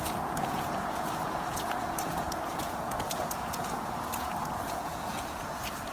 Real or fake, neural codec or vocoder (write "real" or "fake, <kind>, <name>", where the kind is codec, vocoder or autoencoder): fake, vocoder, Vocos